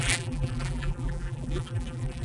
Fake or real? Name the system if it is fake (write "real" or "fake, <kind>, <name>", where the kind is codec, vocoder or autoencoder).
fake, vocoder, BigVGAN v2